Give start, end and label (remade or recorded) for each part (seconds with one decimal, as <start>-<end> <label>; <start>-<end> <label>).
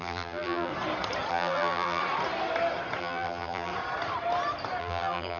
0.0-0.7 remade; 0.7-1.3 recorded; 1.3-2.0 remade; 2.0-3.0 recorded; 3.0-3.7 remade; 3.7-4.8 recorded; 4.8-5.4 remade